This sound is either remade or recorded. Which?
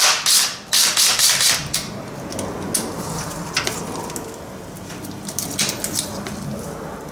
recorded